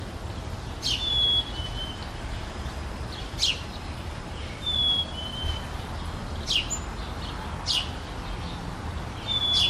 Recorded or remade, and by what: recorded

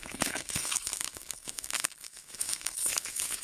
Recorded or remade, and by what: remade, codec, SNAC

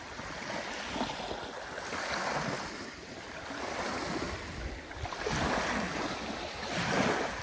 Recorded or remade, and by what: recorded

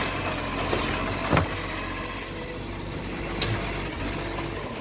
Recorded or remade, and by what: recorded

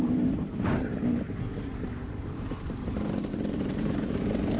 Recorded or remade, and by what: remade, vocoder, BigVGAN v2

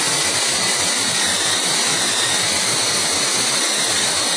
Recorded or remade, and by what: recorded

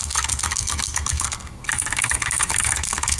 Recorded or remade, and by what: remade, codec, SNAC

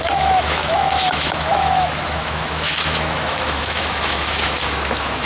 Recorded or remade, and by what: remade, autoencoder, DAC-VAE